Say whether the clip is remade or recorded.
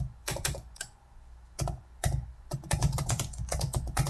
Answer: remade